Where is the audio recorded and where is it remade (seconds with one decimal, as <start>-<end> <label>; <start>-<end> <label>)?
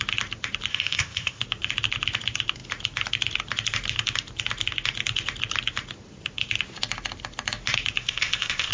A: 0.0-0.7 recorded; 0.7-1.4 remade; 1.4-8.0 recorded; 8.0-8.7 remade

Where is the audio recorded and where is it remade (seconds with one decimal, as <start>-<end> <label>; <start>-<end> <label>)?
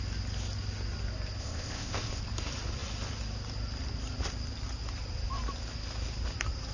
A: 0.0-1.4 recorded; 1.4-2.2 remade; 2.2-6.7 recorded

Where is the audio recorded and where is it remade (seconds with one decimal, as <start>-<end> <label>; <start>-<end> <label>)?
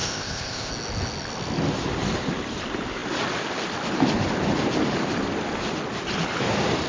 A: 0.0-0.7 remade; 0.7-6.9 recorded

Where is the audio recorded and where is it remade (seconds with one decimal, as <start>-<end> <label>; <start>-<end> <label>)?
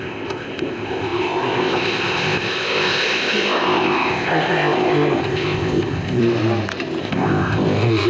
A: 0.0-6.2 remade; 6.2-7.0 recorded; 7.0-8.1 remade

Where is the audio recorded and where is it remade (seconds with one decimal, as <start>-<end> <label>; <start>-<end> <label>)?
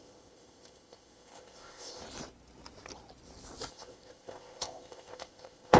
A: 0.0-2.0 remade; 2.0-3.7 recorded; 3.7-5.8 remade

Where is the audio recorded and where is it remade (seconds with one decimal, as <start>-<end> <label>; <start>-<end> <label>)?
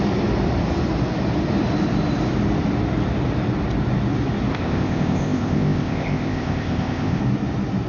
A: 0.0-4.5 recorded; 4.5-7.2 remade; 7.2-7.9 recorded